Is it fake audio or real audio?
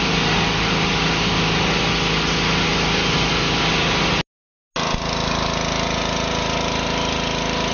real